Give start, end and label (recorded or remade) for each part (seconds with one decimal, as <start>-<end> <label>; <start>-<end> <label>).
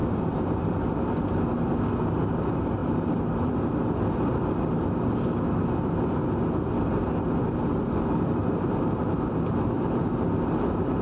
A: 0.0-0.7 remade; 0.7-2.8 recorded; 2.8-3.5 remade; 3.5-8.4 recorded; 8.4-9.0 remade; 9.0-11.0 recorded